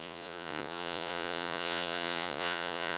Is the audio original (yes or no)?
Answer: no